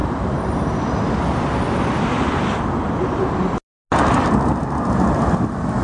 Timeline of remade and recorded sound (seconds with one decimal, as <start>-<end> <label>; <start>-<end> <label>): 0.0-0.8 remade; 0.8-5.8 recorded